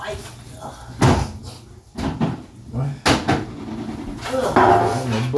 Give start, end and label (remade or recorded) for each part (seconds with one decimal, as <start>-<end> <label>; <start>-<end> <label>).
0.0-5.4 recorded